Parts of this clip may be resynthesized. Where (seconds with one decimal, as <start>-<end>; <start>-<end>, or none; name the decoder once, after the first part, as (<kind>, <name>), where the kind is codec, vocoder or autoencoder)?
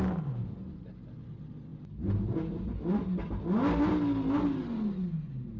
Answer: none